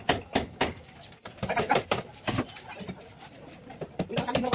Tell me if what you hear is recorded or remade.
recorded